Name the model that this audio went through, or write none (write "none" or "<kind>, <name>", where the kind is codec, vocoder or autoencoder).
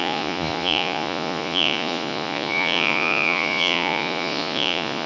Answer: vocoder, Vocos